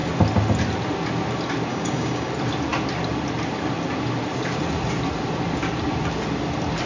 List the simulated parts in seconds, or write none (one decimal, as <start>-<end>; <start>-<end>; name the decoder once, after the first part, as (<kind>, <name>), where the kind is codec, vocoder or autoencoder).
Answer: 1.7-2.3 (codec, DAC)

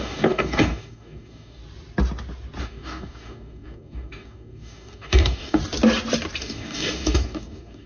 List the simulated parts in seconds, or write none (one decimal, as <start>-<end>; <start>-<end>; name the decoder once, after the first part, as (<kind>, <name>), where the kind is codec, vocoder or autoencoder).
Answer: 0.0-1.6 (codec, DAC); 2.6-5.6; 6.4-7.9